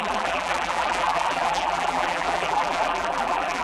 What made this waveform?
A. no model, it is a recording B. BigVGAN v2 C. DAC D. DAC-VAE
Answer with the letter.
B